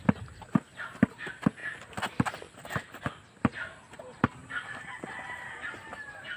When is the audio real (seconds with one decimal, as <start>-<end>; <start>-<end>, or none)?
0.0-6.4